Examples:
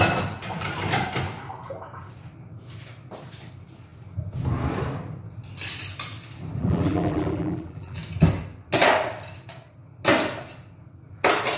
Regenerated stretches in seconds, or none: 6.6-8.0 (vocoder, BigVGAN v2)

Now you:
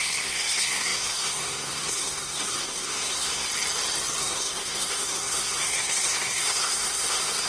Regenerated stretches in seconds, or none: 0.0-3.5 (codec, SNAC); 4.2-7.5